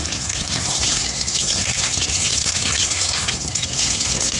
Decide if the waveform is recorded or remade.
remade